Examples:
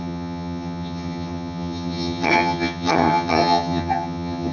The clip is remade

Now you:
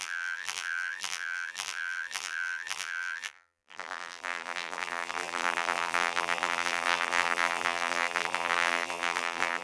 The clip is remade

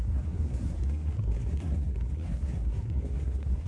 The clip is remade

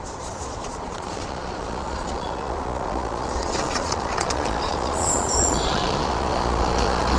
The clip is remade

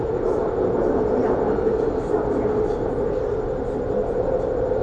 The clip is recorded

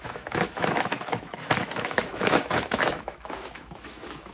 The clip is remade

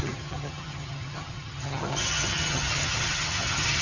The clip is remade